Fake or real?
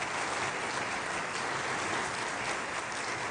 real